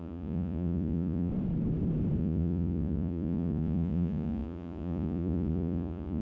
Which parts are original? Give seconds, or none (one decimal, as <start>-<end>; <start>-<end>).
1.3-2.2